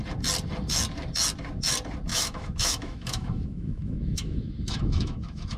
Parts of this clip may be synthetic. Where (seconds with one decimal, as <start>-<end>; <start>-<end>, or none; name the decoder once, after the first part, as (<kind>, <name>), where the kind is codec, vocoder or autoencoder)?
2.1-5.6 (autoencoder, DAC-VAE)